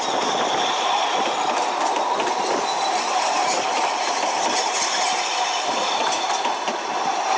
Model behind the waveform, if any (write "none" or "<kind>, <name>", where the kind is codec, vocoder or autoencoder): none